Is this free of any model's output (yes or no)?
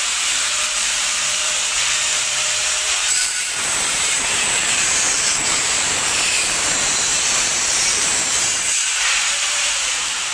no